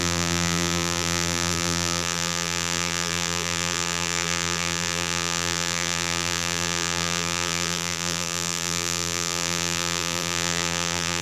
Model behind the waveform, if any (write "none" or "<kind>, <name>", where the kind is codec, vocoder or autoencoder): vocoder, BigVGAN v2